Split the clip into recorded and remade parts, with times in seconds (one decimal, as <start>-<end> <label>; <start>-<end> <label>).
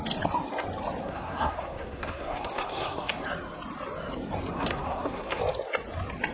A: 0.0-1.0 recorded; 1.0-3.1 remade; 3.1-4.5 recorded; 4.5-5.4 remade; 5.4-6.3 recorded